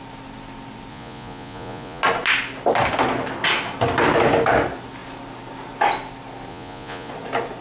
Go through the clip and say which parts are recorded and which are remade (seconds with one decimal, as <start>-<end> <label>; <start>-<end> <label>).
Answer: 0.0-0.9 recorded; 0.9-2.0 remade; 2.0-6.5 recorded; 6.5-7.1 remade; 7.1-7.6 recorded